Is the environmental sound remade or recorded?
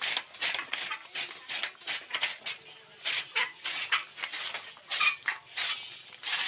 recorded